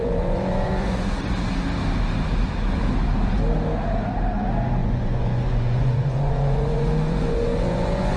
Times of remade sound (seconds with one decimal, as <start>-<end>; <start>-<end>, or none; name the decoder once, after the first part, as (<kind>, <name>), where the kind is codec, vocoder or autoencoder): 0.0-1.3 (vocoder, Vocos); 4.8-8.2